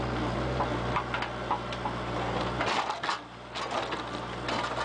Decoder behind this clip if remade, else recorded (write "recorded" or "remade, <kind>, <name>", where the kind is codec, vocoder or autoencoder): recorded